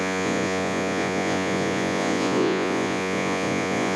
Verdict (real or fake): fake